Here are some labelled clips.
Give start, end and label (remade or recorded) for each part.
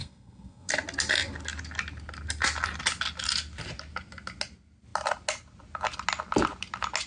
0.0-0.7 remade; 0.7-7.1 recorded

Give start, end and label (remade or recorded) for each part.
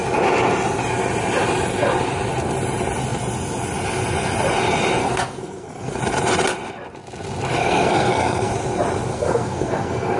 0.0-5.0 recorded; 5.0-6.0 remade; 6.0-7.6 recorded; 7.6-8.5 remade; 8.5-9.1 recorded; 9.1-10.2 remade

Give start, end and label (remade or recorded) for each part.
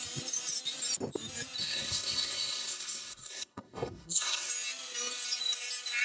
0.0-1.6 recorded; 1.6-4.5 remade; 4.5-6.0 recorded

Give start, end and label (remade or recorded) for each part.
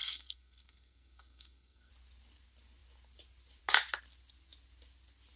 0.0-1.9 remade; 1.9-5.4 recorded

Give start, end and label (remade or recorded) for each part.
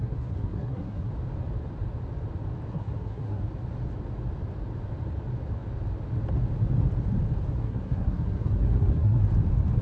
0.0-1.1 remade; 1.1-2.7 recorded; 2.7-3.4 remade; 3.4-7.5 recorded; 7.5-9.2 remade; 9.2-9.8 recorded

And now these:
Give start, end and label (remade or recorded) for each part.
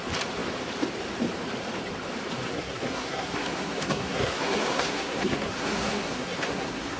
0.0-2.5 recorded; 2.5-7.0 remade